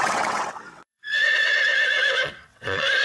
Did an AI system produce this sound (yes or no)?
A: yes